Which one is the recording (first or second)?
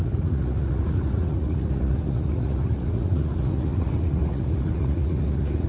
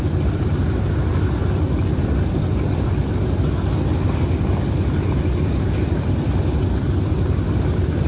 second